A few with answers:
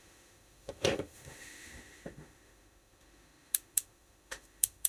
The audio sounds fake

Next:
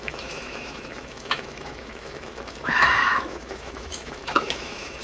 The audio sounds fake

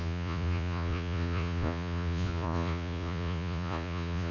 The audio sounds fake